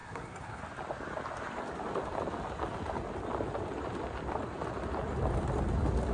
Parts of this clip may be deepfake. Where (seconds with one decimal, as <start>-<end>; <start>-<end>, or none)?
0.0-0.6